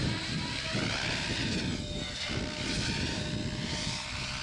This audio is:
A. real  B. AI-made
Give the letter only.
A